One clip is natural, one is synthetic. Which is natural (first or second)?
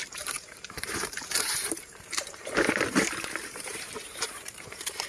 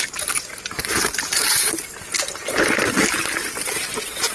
second